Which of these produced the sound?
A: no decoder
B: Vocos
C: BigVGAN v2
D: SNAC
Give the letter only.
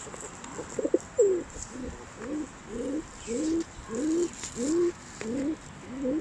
A